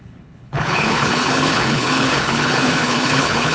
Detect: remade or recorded remade